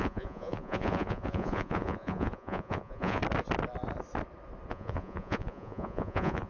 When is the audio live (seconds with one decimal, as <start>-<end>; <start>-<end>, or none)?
3.2-4.7